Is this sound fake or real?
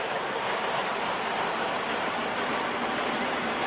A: fake